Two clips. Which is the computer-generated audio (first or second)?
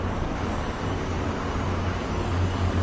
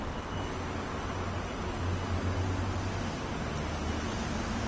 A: first